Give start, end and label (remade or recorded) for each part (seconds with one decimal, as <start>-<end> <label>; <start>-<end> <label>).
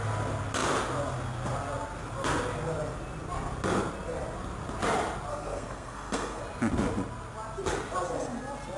0.0-5.3 recorded; 5.3-6.4 remade; 6.4-8.8 recorded